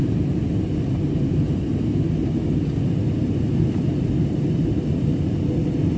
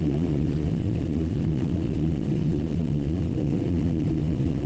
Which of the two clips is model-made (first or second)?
second